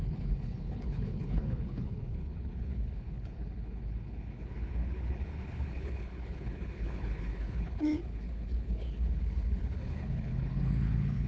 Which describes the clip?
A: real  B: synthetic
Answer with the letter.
B